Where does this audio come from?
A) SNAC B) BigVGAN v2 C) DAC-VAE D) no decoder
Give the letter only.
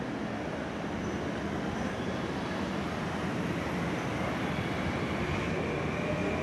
D